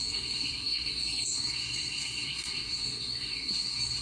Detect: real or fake fake